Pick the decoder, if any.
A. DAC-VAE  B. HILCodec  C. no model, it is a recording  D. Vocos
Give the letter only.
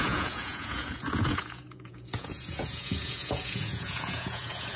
D